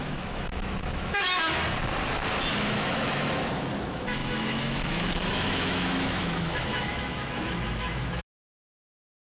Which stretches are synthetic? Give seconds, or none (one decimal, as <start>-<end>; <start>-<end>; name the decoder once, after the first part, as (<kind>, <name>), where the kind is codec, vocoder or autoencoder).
0.0-1.6 (autoencoder, DAC-VAE); 2.5-9.2